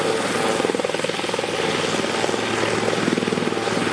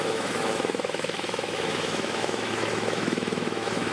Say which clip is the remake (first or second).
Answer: second